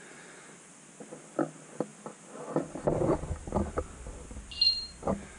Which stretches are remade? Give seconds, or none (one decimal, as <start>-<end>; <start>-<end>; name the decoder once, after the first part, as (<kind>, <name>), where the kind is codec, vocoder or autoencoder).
none